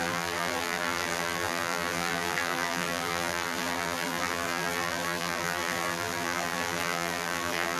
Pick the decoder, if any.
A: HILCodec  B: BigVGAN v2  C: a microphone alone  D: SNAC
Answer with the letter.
B